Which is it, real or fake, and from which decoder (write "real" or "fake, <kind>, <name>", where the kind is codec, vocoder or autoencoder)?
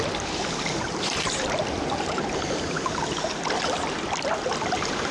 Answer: real